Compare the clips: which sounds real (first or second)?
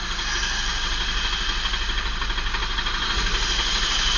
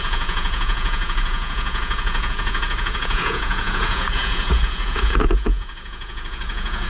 first